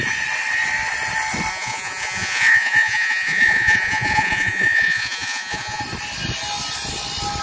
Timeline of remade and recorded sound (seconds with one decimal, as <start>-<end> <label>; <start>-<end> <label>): 0.0-1.5 recorded; 1.5-5.8 remade; 5.8-7.4 recorded